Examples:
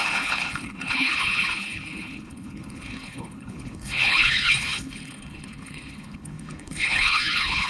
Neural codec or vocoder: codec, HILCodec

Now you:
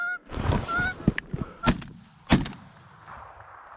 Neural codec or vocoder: none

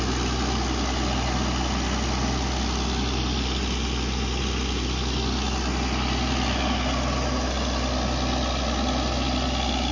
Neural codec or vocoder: none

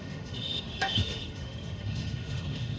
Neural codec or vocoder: autoencoder, DAC-VAE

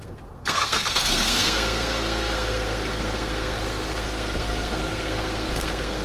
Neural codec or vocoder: codec, SNAC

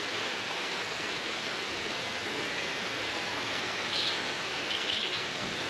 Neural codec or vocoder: codec, SNAC